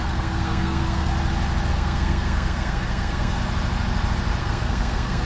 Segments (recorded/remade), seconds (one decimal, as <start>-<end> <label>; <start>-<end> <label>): 0.0-1.1 remade; 1.1-1.7 recorded; 1.7-3.4 remade; 3.4-4.4 recorded; 4.4-5.3 remade